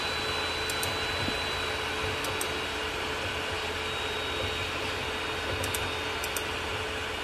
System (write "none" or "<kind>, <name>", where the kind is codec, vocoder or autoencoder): none